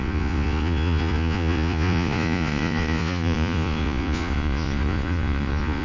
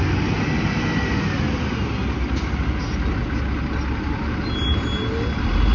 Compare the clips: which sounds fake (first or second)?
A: first